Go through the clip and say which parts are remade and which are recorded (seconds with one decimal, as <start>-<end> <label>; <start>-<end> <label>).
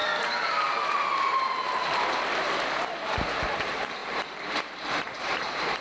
0.0-1.8 recorded; 1.8-5.8 remade